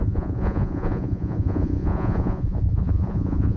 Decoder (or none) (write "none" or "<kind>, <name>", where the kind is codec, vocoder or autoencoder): vocoder, Vocos